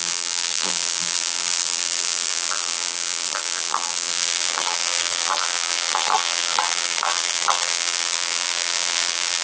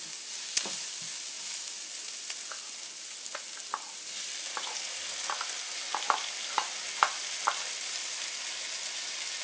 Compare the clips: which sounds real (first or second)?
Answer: second